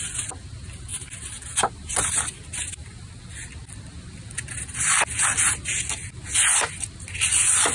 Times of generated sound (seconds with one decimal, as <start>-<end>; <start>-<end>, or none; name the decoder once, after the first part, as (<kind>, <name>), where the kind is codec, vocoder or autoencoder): 0.9-3.2 (vocoder, BigVGAN v2)